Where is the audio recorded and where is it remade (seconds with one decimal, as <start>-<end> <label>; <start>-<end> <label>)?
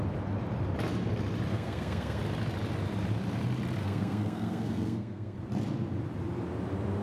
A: 0.0-1.5 recorded; 1.5-2.2 remade; 2.2-3.8 recorded; 3.8-5.4 remade; 5.4-7.0 recorded